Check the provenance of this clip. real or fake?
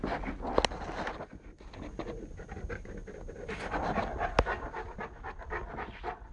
real